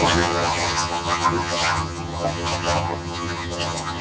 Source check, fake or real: fake